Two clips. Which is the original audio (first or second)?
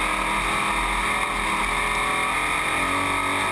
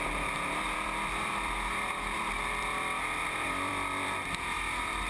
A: first